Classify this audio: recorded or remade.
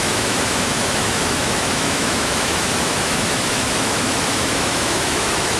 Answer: remade